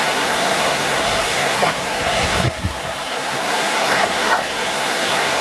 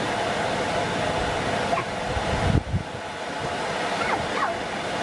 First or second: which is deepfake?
first